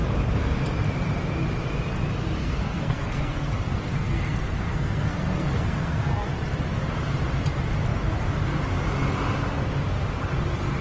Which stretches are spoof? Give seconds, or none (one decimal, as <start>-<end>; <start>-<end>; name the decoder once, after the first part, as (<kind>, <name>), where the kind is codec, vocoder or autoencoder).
2.4-6.3 (codec, SNAC)